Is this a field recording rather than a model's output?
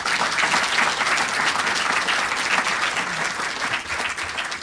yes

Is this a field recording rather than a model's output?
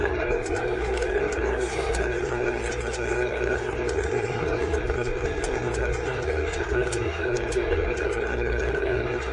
no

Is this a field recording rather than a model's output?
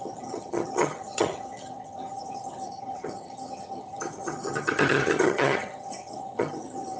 no